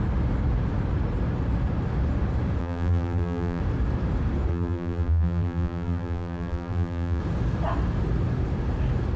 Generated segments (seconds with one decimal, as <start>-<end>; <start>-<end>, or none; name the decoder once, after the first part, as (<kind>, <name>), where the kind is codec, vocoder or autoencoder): 2.6-3.6 (vocoder, BigVGAN v2); 4.5-7.2